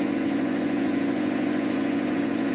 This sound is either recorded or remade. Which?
remade